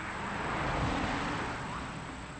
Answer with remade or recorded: recorded